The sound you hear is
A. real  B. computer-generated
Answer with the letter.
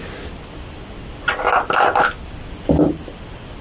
A